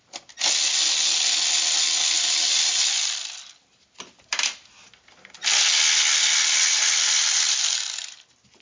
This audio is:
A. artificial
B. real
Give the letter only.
B